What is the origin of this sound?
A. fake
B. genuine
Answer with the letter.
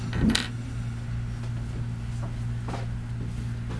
B